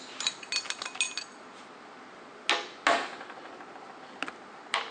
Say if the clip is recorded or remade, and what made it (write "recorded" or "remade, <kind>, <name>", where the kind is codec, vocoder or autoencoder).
recorded